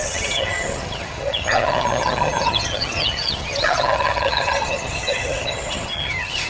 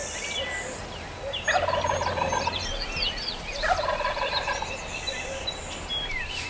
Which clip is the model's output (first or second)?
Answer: first